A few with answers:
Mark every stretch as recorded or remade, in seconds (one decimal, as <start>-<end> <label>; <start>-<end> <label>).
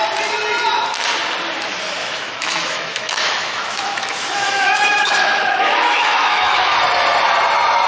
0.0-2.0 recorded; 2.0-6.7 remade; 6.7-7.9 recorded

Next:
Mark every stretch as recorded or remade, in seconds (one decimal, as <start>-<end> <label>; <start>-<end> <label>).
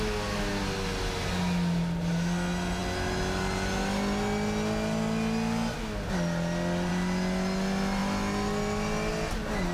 0.0-9.7 recorded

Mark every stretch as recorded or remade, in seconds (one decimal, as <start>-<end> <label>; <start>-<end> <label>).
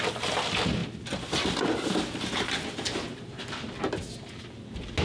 0.0-5.0 recorded